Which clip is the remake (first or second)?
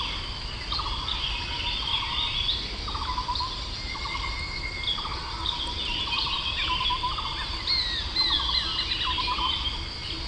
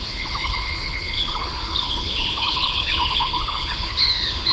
second